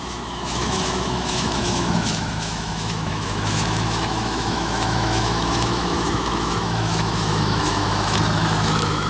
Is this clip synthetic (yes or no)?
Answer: yes